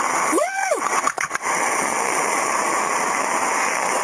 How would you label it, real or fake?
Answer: fake